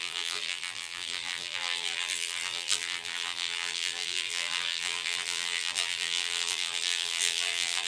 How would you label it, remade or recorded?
remade